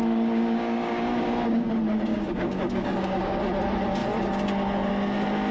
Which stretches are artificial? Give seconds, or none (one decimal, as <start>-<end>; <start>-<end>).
0.0-1.7; 2.1-3.4